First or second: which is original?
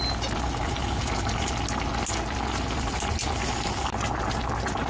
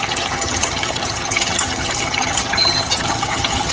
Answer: first